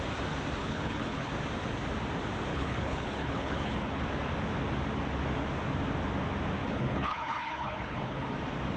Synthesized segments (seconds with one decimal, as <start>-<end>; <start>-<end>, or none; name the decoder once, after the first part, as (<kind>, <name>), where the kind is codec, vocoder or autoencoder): 0.6-1.3 (codec, HILCodec); 2.5-4.0; 6.6-8.3